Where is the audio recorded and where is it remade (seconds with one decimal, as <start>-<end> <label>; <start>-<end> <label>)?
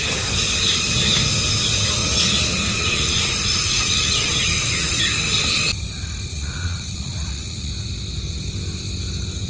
0.0-2.0 recorded; 2.0-5.0 remade; 5.0-6.3 recorded; 6.3-7.7 remade; 7.7-9.5 recorded